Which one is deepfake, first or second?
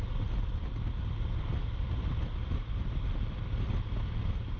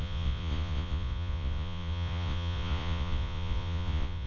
second